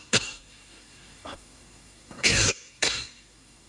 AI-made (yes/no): yes